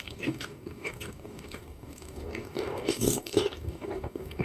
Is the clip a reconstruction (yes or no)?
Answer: yes